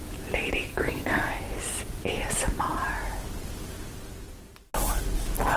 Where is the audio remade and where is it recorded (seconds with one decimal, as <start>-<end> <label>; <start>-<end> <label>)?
0.0-0.7 recorded; 0.7-1.3 remade; 1.3-5.6 recorded